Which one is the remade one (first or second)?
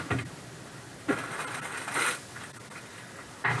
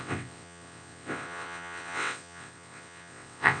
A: second